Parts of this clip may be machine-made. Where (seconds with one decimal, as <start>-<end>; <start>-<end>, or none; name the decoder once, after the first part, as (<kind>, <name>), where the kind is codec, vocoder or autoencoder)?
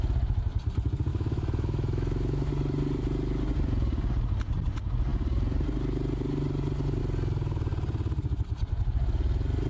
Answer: 1.1-2.5 (autoencoder, DAC-VAE)